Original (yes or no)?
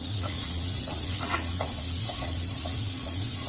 no